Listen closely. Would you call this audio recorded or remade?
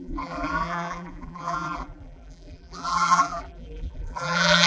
remade